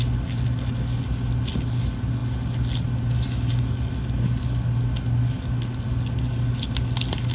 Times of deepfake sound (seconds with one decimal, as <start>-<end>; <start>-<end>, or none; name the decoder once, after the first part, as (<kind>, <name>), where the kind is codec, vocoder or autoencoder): none